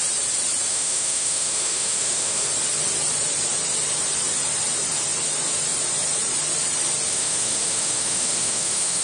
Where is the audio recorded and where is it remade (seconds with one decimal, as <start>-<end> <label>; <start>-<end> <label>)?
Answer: 0.0-0.7 recorded; 0.7-2.5 remade; 2.5-7.1 recorded; 7.1-9.0 remade